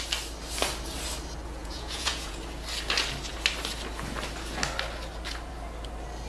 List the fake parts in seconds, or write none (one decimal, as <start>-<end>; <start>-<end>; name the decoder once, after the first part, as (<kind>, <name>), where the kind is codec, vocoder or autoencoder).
1.6-2.4 (vocoder, Vocos)